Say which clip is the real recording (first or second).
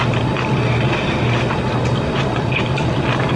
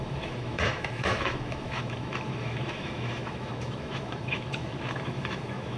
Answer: first